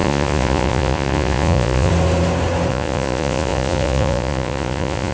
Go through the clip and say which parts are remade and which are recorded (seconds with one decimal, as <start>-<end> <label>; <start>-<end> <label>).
0.0-1.9 remade; 1.9-2.7 recorded; 2.7-5.1 remade